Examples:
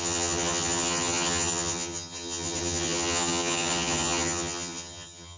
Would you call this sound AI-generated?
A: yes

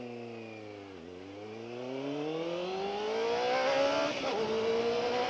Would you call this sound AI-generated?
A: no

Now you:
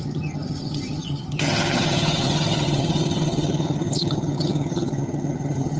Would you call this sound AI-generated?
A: yes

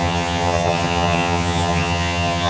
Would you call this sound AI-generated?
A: yes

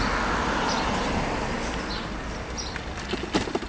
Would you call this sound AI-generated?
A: no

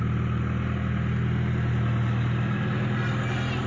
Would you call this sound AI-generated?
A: no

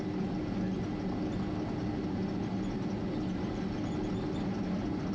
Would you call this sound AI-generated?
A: no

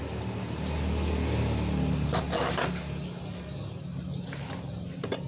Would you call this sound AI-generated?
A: no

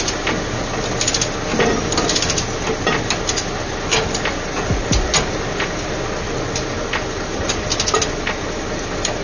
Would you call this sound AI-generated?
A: no